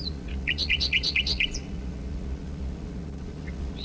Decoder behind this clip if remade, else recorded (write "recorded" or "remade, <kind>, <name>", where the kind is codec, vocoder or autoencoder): remade, vocoder, Vocos